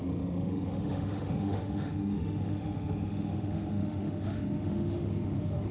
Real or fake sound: fake